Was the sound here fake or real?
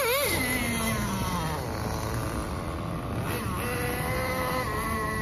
real